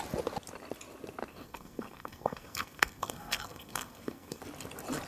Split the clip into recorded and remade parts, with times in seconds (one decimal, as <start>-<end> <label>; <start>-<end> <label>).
0.0-1.3 recorded; 1.3-4.4 remade; 4.4-5.1 recorded